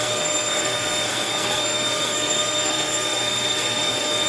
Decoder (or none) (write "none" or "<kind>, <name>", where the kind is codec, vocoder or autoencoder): codec, SNAC